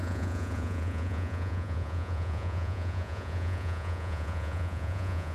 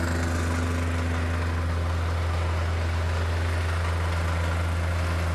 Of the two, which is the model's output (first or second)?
first